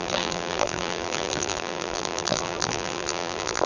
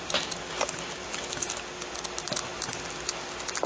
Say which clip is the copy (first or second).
first